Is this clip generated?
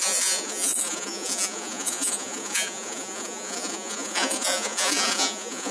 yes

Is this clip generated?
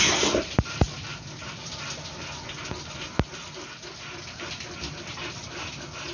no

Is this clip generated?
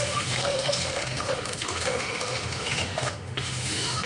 yes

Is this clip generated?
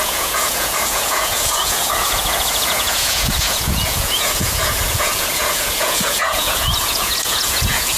yes